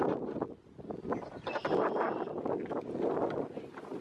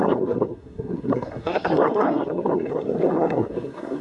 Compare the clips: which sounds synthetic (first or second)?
second